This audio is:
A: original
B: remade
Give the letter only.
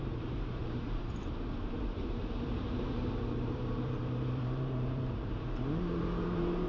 B